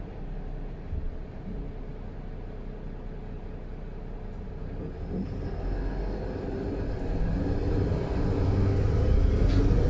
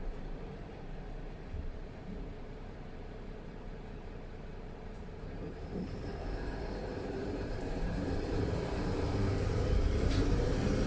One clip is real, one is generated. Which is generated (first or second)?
second